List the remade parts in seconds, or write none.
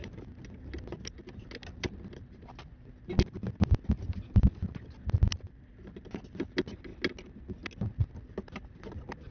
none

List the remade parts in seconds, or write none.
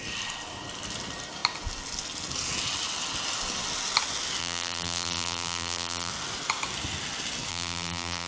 4.4-6.1; 7.5-8.3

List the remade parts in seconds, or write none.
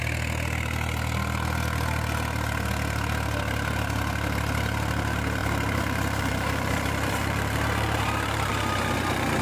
5.4-8.5